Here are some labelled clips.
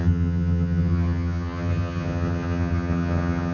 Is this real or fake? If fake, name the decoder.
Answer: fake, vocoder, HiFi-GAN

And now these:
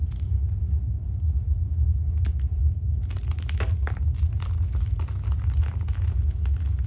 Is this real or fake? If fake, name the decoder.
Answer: real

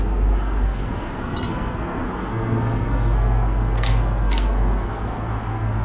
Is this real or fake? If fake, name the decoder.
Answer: fake, codec, SNAC